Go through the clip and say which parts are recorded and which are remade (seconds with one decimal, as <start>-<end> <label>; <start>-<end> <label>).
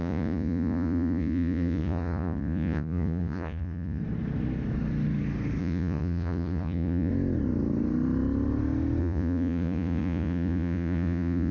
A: 0.0-4.0 remade; 4.0-5.6 recorded; 5.6-7.1 remade; 7.1-9.0 recorded; 9.0-11.5 remade